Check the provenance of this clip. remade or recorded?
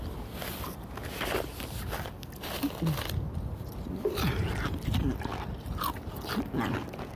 recorded